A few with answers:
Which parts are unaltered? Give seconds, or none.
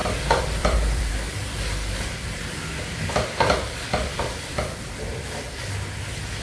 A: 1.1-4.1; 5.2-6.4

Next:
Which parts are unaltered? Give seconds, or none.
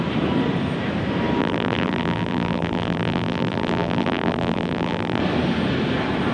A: 0.0-1.4; 5.2-6.3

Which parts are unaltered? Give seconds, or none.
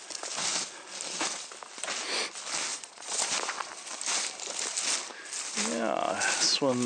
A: 0.0-2.7; 3.3-6.9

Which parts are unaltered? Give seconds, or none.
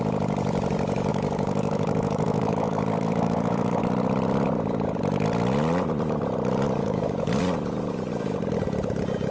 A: 0.0-1.1; 3.8-6.8; 7.4-9.3